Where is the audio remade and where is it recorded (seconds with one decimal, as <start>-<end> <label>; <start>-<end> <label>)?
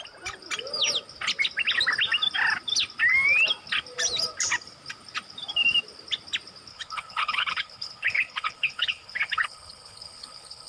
0.0-6.7 recorded; 6.7-10.7 remade